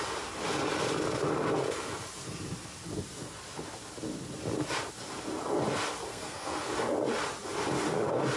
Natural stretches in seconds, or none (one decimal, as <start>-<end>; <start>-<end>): 0.0-6.1; 6.7-8.4